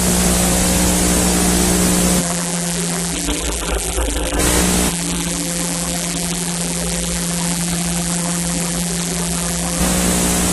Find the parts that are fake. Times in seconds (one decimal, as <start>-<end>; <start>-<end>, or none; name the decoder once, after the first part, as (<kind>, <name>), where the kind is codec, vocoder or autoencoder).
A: 2.2-4.4 (vocoder, BigVGAN v2); 4.9-9.8